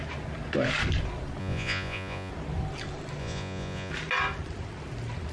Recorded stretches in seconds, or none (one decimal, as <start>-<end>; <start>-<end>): 0.0-1.4; 2.3-3.2; 3.9-5.3